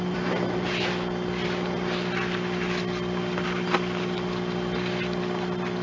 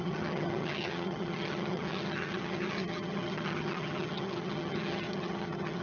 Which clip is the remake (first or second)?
second